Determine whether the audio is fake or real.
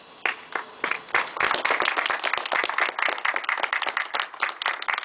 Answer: real